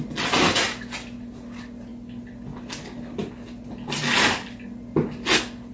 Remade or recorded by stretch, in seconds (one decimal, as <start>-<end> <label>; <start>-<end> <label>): 0.0-5.7 recorded